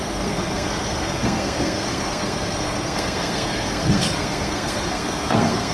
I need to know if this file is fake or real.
fake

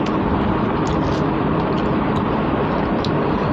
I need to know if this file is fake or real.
real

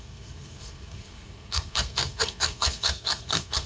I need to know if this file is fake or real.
fake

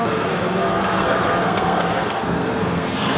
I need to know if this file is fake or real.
fake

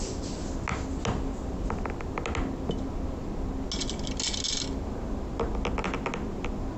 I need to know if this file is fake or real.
real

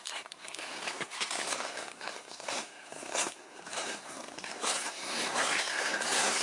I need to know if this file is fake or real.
fake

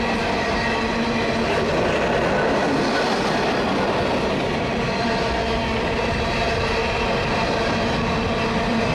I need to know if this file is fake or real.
real